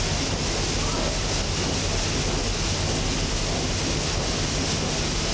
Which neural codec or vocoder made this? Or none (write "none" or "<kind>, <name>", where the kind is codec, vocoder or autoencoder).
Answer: none